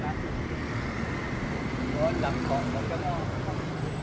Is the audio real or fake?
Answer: real